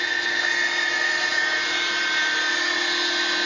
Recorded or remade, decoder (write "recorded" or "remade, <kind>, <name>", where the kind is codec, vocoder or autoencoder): recorded